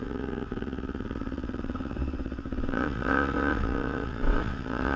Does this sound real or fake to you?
fake